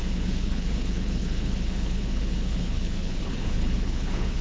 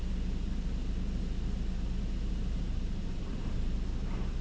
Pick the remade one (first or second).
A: first